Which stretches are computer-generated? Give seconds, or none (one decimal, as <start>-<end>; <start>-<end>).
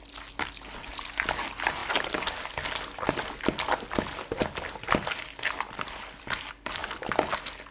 none